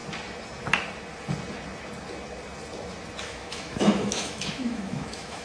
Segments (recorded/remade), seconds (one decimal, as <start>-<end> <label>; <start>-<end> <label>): 0.0-3.2 recorded; 3.2-5.4 remade